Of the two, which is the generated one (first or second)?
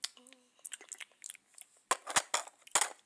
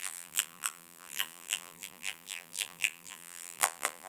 second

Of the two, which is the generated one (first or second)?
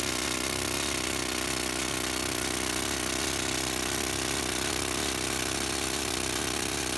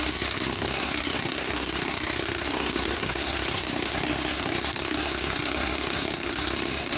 second